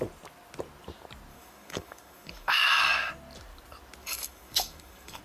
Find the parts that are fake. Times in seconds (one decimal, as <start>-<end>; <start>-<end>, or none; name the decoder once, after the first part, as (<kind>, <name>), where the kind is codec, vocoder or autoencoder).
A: 1.3-3.1 (codec, DAC); 4.0-5.2